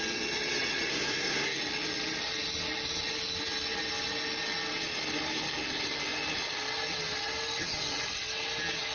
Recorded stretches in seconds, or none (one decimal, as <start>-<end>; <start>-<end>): 0.0-0.9; 1.6-8.9